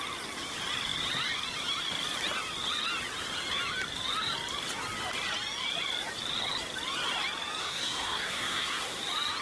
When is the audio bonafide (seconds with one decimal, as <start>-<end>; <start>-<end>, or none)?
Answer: 0.0-7.6; 9.0-9.4